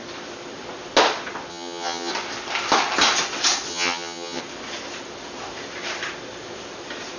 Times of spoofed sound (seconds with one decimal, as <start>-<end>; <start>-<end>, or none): 1.5-2.1; 3.7-4.4